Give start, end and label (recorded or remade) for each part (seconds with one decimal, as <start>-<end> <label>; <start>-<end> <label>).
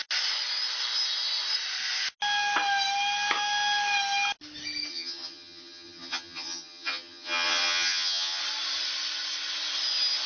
0.0-4.9 recorded; 4.9-8.4 remade; 8.4-10.3 recorded